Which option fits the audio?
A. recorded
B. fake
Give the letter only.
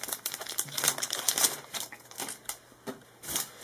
A